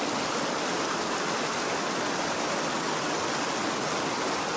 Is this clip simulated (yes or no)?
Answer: no